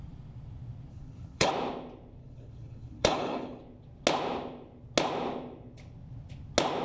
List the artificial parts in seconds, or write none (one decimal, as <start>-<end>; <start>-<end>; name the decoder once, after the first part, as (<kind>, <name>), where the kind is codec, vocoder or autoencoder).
0.9-1.5 (codec, HILCodec); 2.2-3.6